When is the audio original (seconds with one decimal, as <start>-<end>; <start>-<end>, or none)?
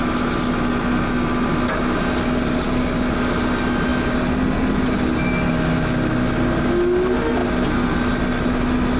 0.0-9.0